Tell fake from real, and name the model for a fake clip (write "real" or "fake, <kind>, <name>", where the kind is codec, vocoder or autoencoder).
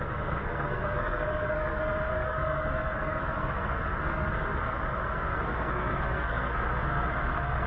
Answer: fake, codec, SNAC